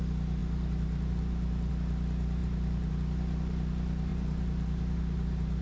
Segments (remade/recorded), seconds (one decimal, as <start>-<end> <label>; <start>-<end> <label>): 0.0-0.4 recorded; 0.4-1.7 remade; 1.7-2.4 recorded; 2.4-2.9 remade; 2.9-4.1 recorded; 4.1-5.6 remade